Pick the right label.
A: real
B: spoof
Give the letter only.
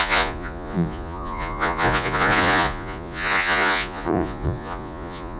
B